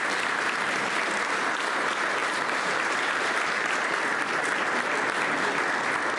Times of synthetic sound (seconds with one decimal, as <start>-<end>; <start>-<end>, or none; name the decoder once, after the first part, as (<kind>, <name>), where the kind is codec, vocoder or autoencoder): 2.2-3.9 (vocoder, BigVGAN v2)